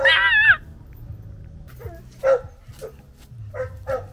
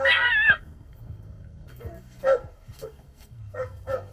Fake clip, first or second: second